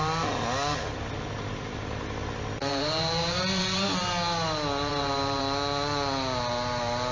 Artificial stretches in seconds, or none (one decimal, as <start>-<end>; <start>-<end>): 2.6-4.1; 4.9-5.4